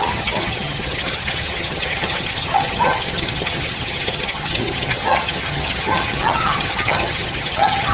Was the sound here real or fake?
fake